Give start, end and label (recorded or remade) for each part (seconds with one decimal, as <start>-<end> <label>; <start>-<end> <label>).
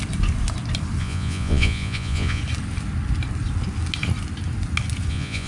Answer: 0.0-1.0 recorded; 1.0-2.4 remade; 2.4-5.1 recorded; 5.1-5.5 remade